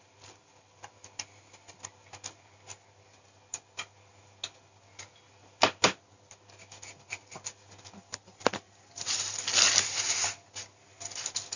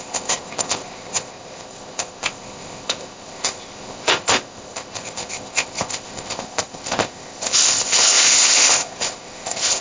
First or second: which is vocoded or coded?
second